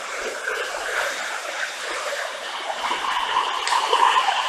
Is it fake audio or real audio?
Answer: fake